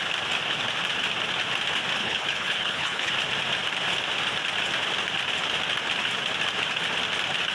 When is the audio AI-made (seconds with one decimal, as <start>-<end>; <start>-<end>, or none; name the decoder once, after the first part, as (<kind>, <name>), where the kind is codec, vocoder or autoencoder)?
2.0-3.1 (codec, HILCodec)